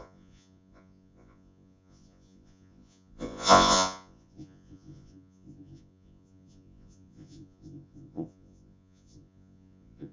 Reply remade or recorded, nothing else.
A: remade